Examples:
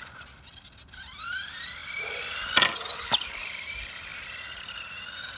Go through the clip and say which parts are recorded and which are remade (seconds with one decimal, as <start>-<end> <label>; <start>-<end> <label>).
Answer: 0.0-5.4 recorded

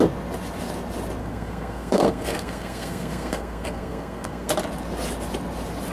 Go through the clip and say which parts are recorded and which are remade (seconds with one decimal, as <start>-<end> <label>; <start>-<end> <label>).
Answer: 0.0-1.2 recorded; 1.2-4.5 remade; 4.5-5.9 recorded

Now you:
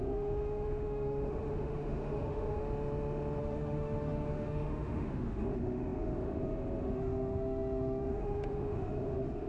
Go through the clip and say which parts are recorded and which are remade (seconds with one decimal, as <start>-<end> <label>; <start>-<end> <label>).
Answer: 0.0-2.6 remade; 2.6-3.4 recorded; 3.4-9.5 remade

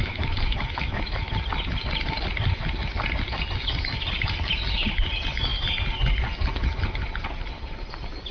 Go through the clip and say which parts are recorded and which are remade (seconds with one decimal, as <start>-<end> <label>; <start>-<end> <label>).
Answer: 0.0-1.3 remade; 1.3-8.3 recorded

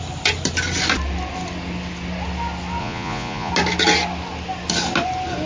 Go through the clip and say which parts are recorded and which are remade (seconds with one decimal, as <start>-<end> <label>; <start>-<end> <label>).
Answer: 0.0-2.8 recorded; 2.8-3.5 remade; 3.5-5.5 recorded

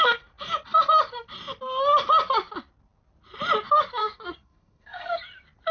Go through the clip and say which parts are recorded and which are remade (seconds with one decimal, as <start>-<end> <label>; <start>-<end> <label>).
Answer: 0.0-4.0 recorded; 4.0-5.2 remade; 5.2-5.7 recorded

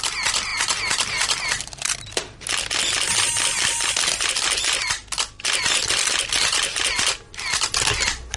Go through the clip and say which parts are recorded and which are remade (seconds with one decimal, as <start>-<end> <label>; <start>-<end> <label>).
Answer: 0.0-8.4 recorded